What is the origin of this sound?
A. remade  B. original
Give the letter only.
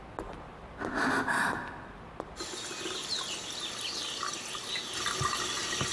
B